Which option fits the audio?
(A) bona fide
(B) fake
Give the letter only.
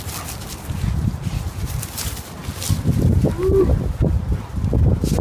A